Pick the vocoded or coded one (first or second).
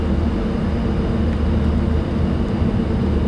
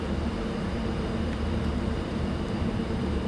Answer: second